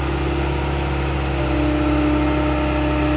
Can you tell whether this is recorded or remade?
recorded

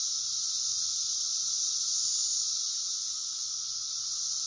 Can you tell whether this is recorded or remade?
recorded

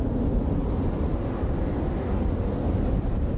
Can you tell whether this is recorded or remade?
recorded